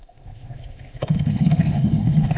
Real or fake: fake